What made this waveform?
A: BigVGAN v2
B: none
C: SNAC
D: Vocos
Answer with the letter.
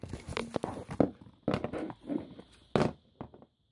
B